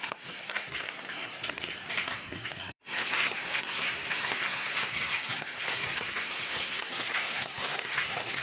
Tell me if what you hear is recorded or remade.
remade